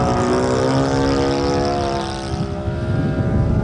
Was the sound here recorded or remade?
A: recorded